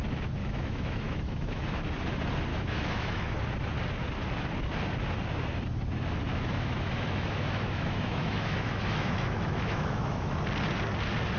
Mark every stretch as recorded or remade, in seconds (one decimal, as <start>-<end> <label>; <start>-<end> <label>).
0.0-0.4 recorded; 0.4-1.8 remade; 1.8-2.5 recorded; 2.5-3.4 remade; 3.4-6.3 recorded; 6.3-10.4 remade; 10.4-11.4 recorded